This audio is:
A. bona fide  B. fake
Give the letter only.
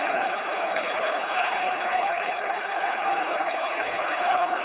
B